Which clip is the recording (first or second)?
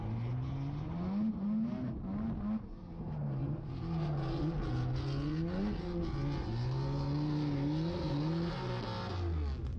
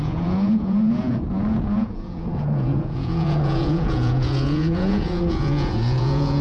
first